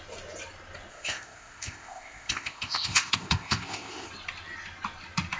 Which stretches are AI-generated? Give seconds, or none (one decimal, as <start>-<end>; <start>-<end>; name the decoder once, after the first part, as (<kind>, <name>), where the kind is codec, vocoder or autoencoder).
0.9-4.1 (codec, ZipCodec)